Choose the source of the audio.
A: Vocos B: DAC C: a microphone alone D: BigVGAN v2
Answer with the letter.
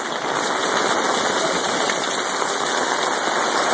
C